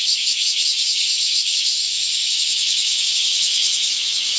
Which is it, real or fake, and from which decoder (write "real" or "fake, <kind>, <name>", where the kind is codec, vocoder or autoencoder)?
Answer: fake, codec, DAC